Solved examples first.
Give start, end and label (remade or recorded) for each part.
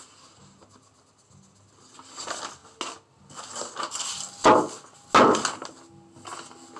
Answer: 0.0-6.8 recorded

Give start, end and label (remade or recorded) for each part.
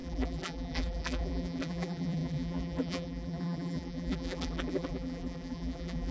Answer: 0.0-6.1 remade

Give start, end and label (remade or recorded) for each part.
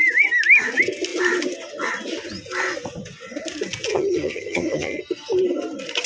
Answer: 0.0-3.9 recorded; 3.9-5.0 remade; 5.0-6.1 recorded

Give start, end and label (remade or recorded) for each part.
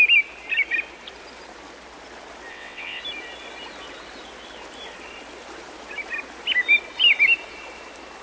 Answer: 0.0-2.5 recorded; 2.5-3.0 remade; 3.0-8.2 recorded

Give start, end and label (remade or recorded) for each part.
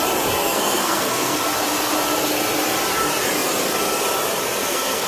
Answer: 0.0-0.4 recorded; 0.4-1.4 remade; 1.4-4.6 recorded; 4.6-5.1 remade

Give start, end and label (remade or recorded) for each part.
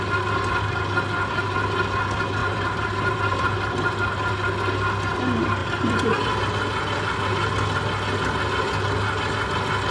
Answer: 0.0-2.4 recorded; 2.4-3.4 remade; 3.4-5.6 recorded; 5.6-6.3 remade; 6.3-9.9 recorded